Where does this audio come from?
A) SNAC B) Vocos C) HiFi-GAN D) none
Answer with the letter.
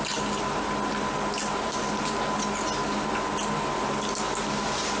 D